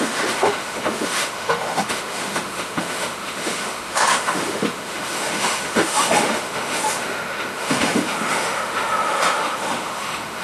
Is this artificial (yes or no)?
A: yes